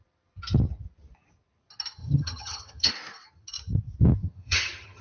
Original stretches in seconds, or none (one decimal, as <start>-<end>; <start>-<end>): 0.0-2.0; 2.9-4.2

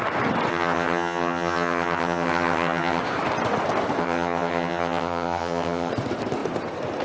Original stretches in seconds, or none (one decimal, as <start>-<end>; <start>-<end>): 0.0-0.5; 3.0-4.0; 5.9-7.0

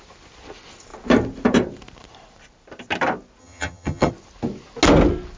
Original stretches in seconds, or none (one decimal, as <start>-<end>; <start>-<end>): 0.0-3.4; 4.1-5.4